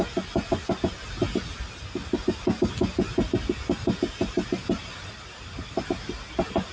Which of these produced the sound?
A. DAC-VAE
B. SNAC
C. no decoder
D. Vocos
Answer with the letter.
C